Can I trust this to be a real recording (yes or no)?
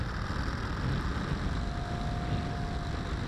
yes